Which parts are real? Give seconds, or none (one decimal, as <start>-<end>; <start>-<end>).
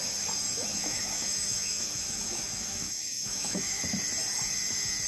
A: 0.0-0.7; 3.8-5.1